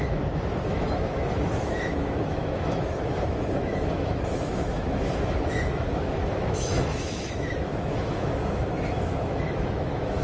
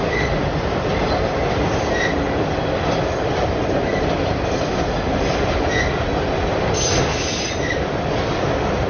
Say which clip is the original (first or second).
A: second